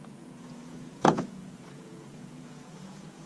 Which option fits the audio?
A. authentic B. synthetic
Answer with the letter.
B